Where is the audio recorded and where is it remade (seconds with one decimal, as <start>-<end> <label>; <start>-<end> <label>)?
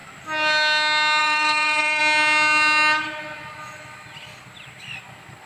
0.0-1.2 recorded; 1.2-2.0 remade; 2.0-5.5 recorded